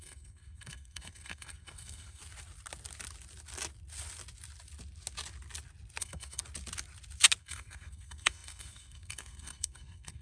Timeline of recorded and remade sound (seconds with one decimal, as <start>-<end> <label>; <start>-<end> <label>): 0.0-2.2 remade; 2.2-6.0 recorded; 6.0-6.4 remade; 6.4-7.4 recorded; 7.4-10.2 remade